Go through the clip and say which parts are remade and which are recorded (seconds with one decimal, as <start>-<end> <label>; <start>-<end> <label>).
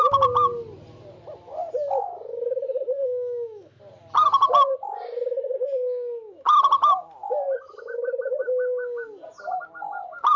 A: 0.0-3.0 recorded; 3.0-3.8 remade; 3.8-10.4 recorded